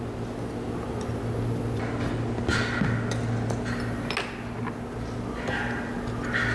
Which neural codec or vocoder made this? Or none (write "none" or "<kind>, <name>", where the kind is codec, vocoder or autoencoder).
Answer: none